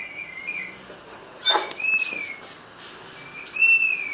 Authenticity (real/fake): real